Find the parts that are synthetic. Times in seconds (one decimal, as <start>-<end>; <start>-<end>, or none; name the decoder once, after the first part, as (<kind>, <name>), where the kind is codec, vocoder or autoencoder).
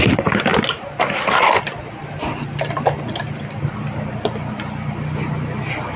none